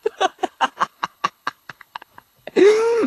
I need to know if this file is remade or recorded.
remade